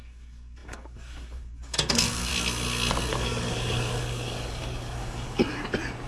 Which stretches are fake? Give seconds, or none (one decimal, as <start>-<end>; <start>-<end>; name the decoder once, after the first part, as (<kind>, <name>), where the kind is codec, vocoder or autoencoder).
0.0-2.3 (codec, DAC); 3.1-5.4